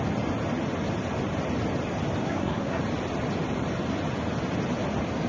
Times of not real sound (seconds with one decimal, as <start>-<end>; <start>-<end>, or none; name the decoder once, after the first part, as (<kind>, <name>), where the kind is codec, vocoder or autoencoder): 2.2-2.8 (codec, SNAC)